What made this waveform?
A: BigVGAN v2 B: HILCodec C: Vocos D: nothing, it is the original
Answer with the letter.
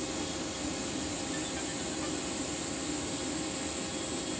D